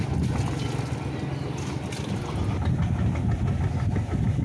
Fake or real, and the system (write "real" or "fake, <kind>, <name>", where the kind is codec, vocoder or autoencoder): real